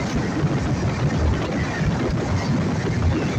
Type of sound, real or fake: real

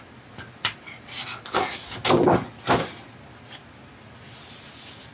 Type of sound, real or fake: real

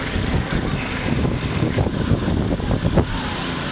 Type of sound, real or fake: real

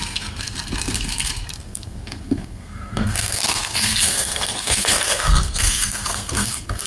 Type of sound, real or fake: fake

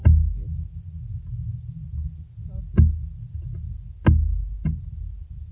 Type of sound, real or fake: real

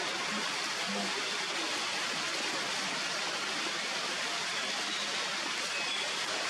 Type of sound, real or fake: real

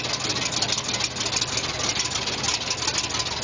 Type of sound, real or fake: real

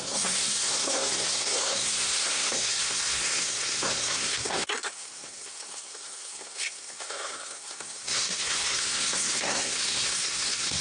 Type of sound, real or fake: fake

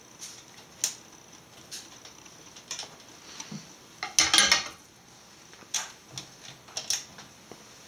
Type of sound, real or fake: real